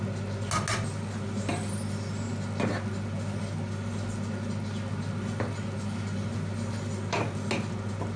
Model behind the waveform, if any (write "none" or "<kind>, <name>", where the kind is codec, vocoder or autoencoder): none